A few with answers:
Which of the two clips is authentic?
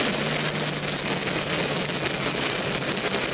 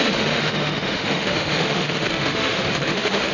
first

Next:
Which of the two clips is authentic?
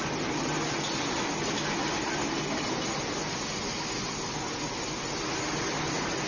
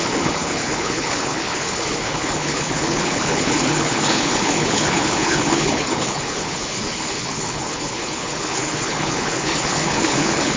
first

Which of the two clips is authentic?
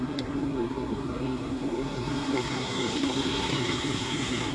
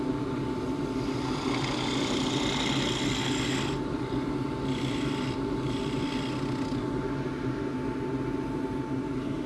second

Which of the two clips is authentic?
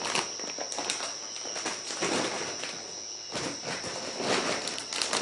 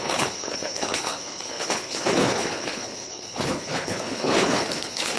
first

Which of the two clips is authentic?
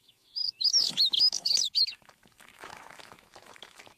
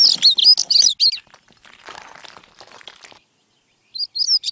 second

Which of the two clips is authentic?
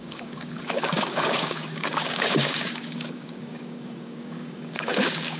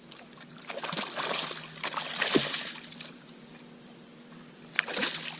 second